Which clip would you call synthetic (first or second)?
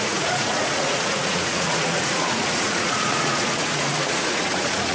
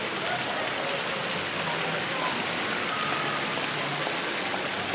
first